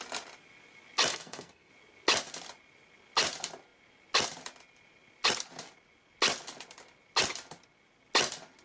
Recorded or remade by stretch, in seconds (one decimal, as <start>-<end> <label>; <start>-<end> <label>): 0.0-1.1 recorded; 1.1-1.7 remade; 1.7-8.6 recorded